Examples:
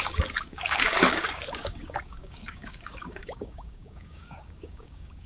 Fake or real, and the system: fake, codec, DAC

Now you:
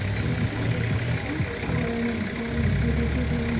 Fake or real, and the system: real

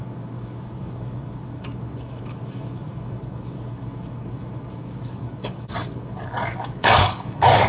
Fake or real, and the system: fake, codec, DAC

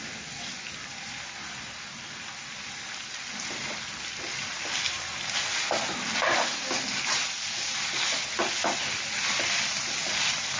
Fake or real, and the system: real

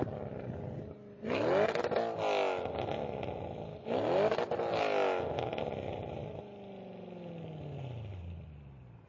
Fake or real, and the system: real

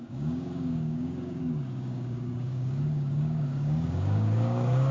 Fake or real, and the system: fake, codec, DAC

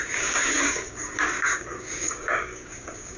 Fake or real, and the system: fake, codec, DAC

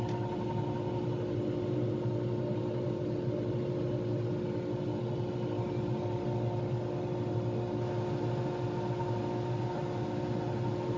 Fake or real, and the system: real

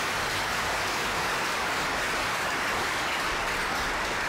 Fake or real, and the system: fake, codec, DAC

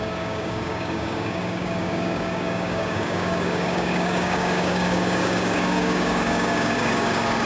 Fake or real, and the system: fake, codec, DAC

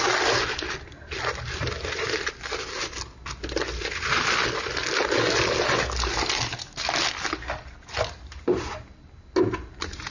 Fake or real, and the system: real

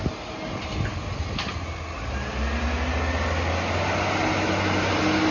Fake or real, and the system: real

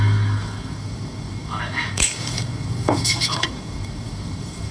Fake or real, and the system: fake, codec, DAC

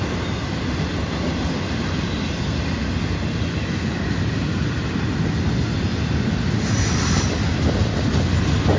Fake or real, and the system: real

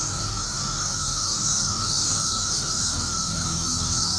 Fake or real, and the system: fake, codec, DAC